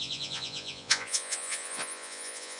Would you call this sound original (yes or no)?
no